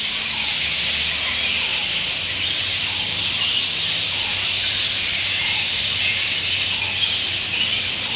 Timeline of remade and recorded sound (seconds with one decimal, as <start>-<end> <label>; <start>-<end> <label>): 0.0-8.2 recorded